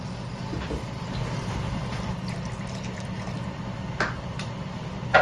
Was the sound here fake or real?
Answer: real